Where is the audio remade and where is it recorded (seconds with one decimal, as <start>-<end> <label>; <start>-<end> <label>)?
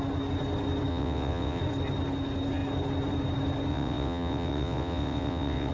0.0-0.9 recorded; 0.9-1.6 remade; 1.6-3.7 recorded; 3.7-5.7 remade